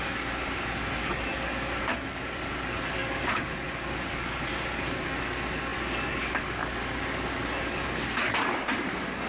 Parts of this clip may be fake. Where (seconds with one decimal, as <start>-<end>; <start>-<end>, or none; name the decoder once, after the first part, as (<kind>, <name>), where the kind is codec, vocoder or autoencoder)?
0.0-9.3 (codec, DAC)